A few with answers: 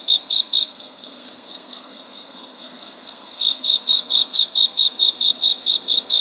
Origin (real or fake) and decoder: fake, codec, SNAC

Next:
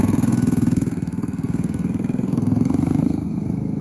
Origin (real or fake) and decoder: fake, codec, SNAC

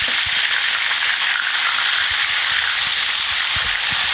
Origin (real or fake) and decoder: real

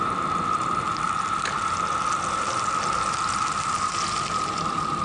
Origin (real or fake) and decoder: real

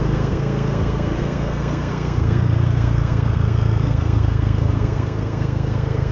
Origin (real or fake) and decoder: fake, codec, SNAC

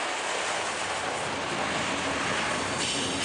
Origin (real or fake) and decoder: real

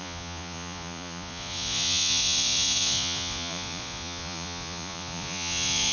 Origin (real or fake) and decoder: fake, vocoder, Vocos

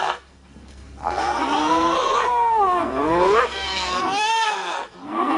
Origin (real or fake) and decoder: fake, codec, SNAC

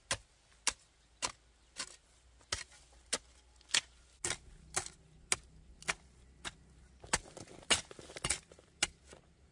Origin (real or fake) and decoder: real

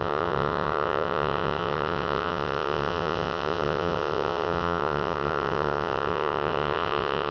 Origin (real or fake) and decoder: fake, vocoder, WaveNeXt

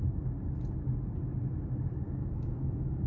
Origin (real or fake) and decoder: real